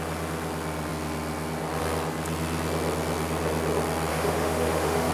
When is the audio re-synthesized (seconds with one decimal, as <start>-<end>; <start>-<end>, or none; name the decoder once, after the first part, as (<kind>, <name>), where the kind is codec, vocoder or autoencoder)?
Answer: 4.1-5.1 (autoencoder, DAC-VAE)